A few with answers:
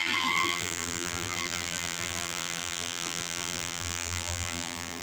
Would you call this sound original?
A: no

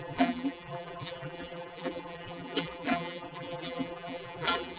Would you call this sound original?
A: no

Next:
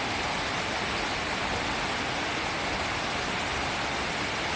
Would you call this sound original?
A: yes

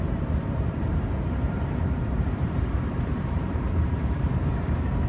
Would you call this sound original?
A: no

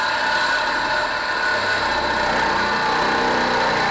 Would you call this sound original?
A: yes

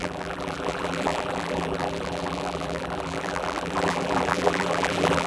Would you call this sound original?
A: no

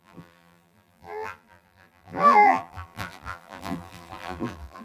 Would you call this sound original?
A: no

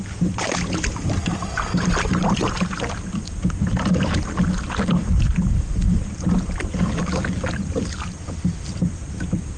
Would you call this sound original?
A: yes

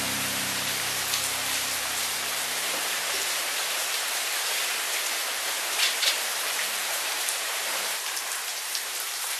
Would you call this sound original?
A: no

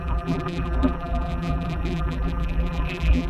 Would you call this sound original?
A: no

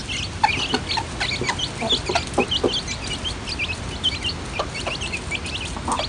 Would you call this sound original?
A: yes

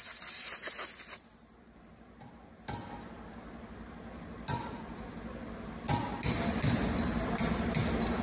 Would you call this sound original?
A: no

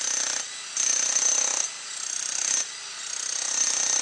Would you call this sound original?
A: yes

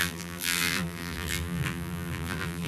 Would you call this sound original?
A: no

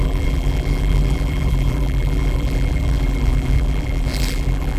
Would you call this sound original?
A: no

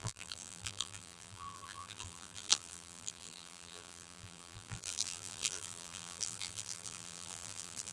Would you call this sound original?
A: no